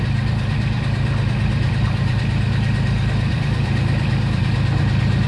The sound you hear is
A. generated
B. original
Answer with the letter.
A